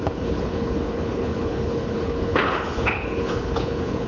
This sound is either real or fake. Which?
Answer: fake